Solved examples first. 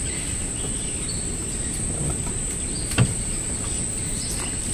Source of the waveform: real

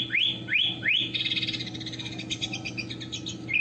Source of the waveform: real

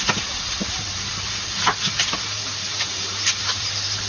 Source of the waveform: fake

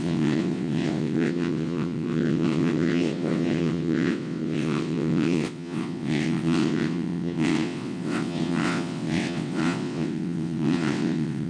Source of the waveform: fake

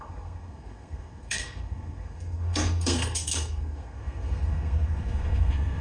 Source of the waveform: fake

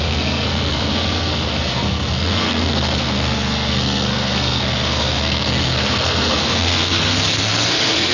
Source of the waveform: fake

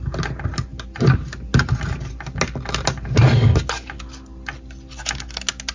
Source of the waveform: real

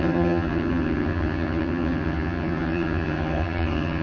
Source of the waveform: fake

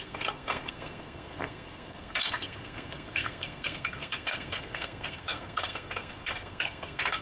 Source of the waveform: fake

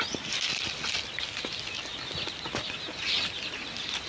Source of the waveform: real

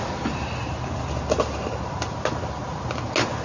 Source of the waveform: real